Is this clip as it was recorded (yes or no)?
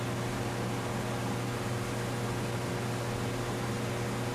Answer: yes